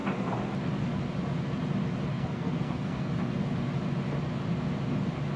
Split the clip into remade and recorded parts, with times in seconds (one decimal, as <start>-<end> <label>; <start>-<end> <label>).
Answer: 0.0-2.1 recorded; 2.1-3.1 remade; 3.1-5.4 recorded